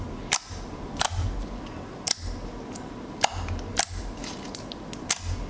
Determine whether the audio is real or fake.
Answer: real